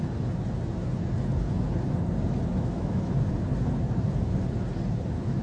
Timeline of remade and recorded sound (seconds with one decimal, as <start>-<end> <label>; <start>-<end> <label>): 0.0-2.5 recorded; 2.5-3.1 remade; 3.1-5.4 recorded